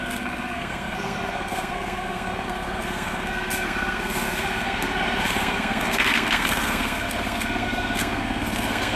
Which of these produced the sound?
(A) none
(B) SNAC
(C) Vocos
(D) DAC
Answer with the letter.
B